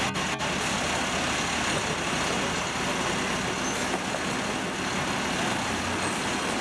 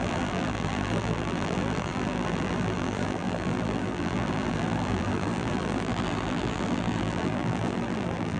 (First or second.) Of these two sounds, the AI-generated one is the second